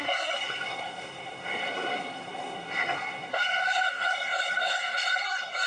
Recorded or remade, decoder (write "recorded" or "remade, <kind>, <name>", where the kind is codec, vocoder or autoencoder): remade, codec, SNAC